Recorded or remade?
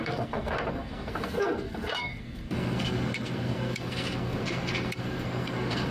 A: remade